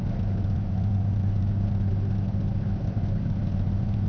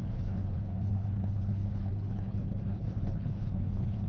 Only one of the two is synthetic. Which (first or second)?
second